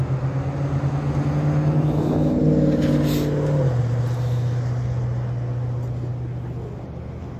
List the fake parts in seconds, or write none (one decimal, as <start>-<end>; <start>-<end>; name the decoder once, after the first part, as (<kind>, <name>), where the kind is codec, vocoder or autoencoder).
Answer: none